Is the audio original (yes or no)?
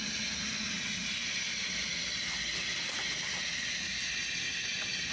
yes